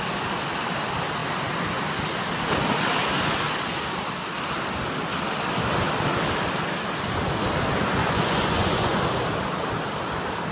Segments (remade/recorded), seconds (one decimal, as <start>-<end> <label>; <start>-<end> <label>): 0.0-8.0 recorded; 8.0-9.0 remade; 9.0-10.5 recorded